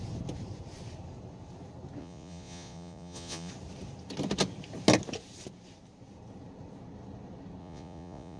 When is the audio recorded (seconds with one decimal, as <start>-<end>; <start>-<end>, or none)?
0.0-2.0; 3.5-7.6